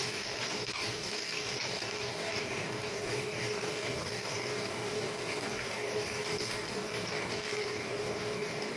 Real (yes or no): no